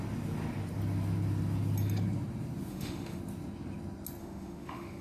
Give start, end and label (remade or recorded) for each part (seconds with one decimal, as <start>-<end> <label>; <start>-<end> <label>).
0.0-2.7 recorded; 2.7-3.2 remade; 3.2-4.2 recorded; 4.2-5.0 remade

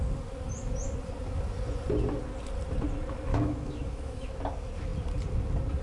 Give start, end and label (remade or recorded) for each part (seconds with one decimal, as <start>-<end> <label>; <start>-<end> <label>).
0.0-3.3 recorded; 3.3-4.3 remade; 4.3-5.8 recorded